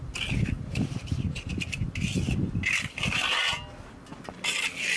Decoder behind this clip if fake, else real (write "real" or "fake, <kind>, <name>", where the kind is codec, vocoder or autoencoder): real